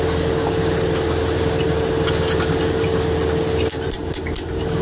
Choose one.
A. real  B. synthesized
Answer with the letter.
A